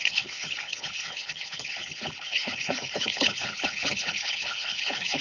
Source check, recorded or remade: remade